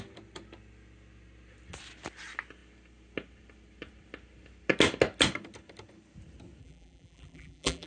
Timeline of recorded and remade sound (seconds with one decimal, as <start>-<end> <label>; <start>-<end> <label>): 0.0-6.6 recorded; 6.6-7.9 remade